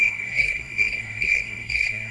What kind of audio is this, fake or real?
fake